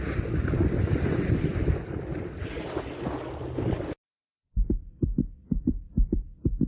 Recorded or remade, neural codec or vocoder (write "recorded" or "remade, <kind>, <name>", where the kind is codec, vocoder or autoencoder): recorded